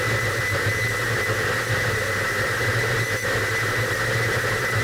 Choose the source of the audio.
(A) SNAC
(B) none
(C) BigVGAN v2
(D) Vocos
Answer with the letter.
B